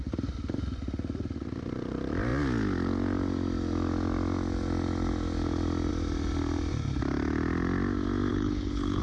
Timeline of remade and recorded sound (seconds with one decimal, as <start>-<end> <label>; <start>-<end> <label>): 0.0-8.3 recorded; 8.3-9.0 remade